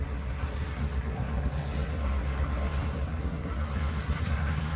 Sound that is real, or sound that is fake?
fake